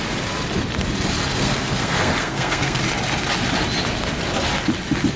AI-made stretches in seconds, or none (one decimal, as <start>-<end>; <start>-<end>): 1.3-2.8